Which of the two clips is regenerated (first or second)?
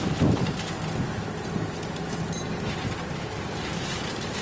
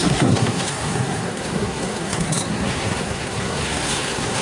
second